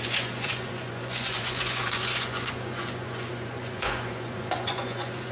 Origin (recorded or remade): remade